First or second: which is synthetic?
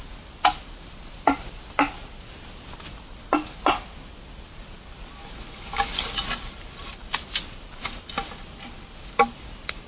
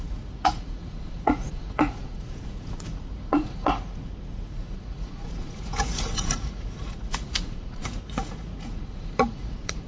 second